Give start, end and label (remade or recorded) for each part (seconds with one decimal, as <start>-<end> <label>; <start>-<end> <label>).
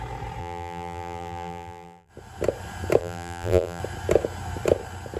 0.0-0.4 recorded; 0.4-2.1 remade; 2.1-3.0 recorded; 3.0-3.8 remade; 3.8-5.2 recorded